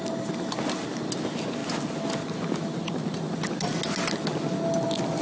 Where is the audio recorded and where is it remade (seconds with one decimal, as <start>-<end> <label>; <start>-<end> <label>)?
0.0-5.2 recorded